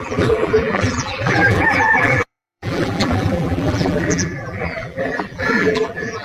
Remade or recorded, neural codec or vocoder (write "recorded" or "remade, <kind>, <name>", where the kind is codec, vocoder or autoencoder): remade, vocoder, BigVGAN v2